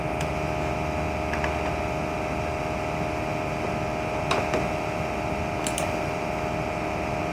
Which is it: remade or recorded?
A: recorded